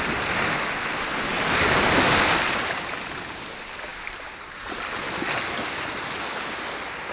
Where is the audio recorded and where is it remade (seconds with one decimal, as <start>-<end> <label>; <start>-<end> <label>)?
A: 0.0-7.1 recorded

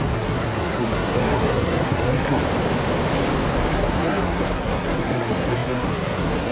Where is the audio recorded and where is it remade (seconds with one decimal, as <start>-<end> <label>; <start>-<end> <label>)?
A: 0.0-2.4 remade; 2.4-3.7 recorded; 3.7-6.5 remade

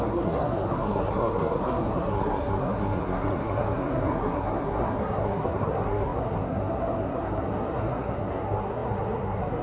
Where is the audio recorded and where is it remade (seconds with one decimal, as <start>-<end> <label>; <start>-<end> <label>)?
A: 0.0-9.6 remade

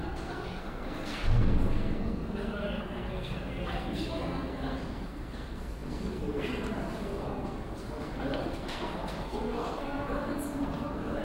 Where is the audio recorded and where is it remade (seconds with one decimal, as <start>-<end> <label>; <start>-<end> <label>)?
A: 0.0-11.2 remade

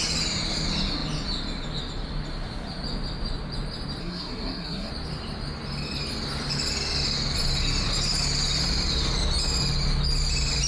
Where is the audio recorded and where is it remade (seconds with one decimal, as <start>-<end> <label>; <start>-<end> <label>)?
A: 0.0-4.0 recorded; 4.0-4.9 remade; 4.9-10.7 recorded

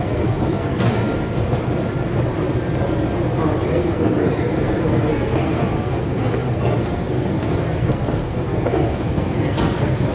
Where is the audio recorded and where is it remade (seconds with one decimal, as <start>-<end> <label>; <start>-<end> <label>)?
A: 0.0-1.0 remade; 1.0-3.7 recorded; 3.7-10.1 remade